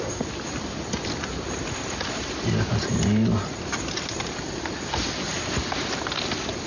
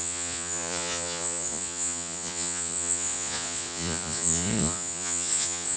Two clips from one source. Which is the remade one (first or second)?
second